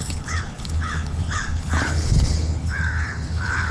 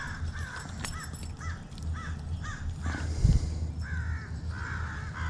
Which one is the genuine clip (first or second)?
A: second